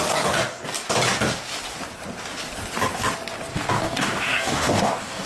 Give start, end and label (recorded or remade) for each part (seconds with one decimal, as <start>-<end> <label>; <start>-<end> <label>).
0.0-3.5 recorded; 3.5-5.3 remade